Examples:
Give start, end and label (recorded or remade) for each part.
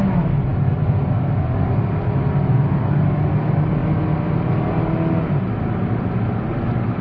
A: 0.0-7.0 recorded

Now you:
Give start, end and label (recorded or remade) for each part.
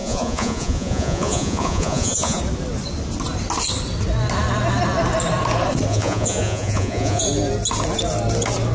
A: 0.0-2.4 remade; 2.4-5.9 recorded; 5.9-7.2 remade; 7.2-8.7 recorded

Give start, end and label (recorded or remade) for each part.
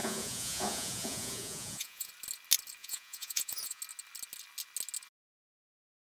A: 0.0-2.1 remade; 2.1-2.8 recorded; 2.8-3.8 remade; 3.8-6.0 recorded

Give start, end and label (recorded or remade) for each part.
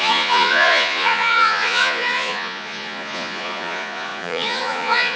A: 0.0-5.2 remade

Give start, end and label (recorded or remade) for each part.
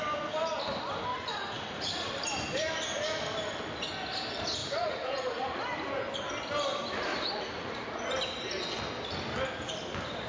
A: 0.0-1.1 recorded; 1.1-2.1 remade; 2.1-4.6 recorded; 4.6-5.6 remade; 5.6-7.1 recorded; 7.1-8.0 remade; 8.0-10.3 recorded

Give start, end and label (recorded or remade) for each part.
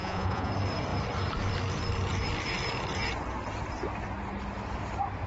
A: 0.0-0.5 remade; 0.5-5.3 recorded